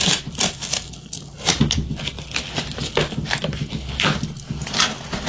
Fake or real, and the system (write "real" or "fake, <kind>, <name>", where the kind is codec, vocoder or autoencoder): real